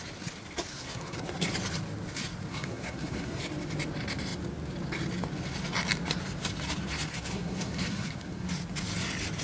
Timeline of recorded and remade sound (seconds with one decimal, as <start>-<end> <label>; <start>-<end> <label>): 0.0-0.7 recorded; 0.7-1.5 remade; 1.5-2.5 recorded; 2.5-3.4 remade; 3.4-7.1 recorded; 7.1-8.5 remade; 8.5-9.4 recorded